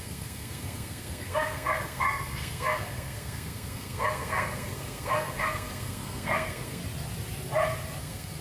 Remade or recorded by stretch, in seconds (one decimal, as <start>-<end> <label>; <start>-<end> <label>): 0.0-6.8 remade; 6.8-8.0 recorded; 8.0-8.4 remade